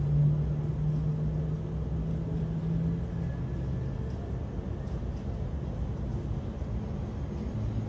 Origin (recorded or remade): recorded